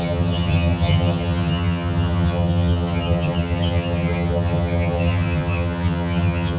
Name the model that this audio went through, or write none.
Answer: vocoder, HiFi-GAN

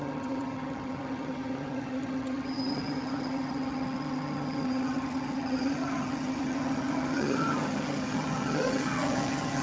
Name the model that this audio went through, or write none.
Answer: vocoder, HiFi-GAN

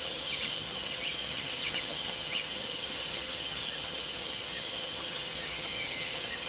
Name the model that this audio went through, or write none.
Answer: vocoder, HiFi-GAN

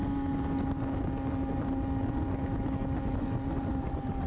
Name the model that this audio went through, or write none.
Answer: none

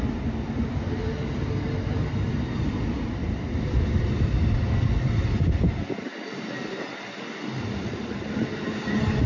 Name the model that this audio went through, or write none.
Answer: none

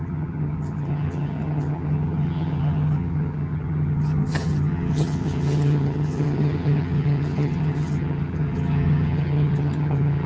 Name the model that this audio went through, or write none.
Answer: vocoder, HiFi-GAN